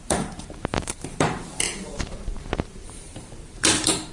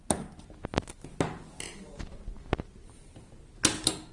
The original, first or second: second